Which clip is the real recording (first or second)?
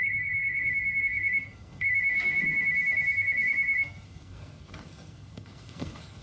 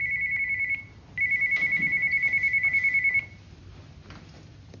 second